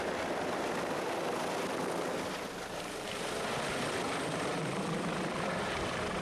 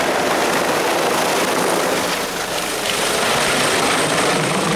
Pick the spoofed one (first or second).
first